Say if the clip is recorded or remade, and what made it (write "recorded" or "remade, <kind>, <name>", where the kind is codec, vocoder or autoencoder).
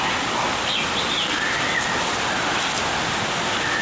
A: recorded